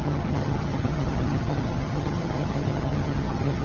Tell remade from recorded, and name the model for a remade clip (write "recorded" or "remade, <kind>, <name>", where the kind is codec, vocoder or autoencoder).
remade, vocoder, HiFi-GAN